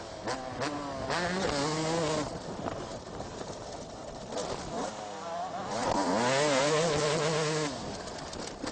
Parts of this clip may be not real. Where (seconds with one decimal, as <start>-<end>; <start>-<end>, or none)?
none